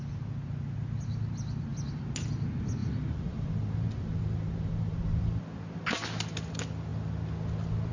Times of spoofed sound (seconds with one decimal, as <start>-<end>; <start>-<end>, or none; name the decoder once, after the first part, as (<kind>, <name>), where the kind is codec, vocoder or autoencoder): 2.8-5.4 (vocoder, BigVGAN v2)